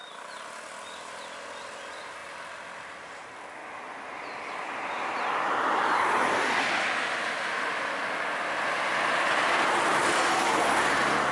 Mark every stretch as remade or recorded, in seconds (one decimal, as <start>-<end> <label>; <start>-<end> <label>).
0.0-11.3 recorded